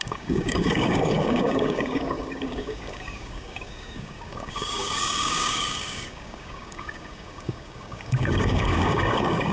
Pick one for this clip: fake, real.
fake